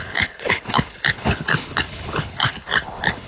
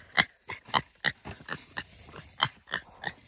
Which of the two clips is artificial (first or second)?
first